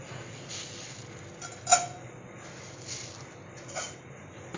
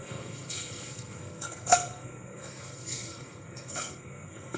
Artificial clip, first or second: second